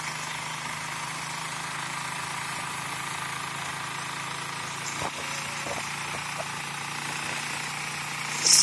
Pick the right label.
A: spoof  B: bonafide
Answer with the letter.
B